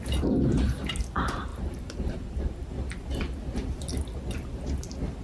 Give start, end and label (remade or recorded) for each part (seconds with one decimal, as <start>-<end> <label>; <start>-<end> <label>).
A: 0.0-1.5 recorded; 1.5-2.4 remade; 2.4-5.2 recorded